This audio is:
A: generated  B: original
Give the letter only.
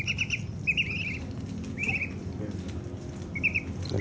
B